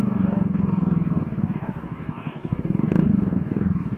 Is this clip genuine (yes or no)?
no